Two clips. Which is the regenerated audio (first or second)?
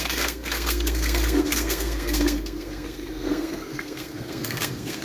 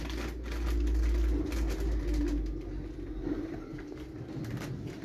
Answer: first